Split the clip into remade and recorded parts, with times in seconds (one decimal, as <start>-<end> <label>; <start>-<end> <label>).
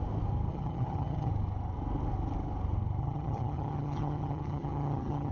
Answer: 0.0-0.5 recorded; 0.5-1.3 remade; 1.3-3.0 recorded; 3.0-5.3 remade